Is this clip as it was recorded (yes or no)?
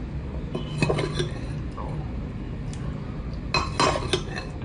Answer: yes